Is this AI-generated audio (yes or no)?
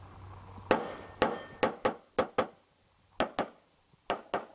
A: no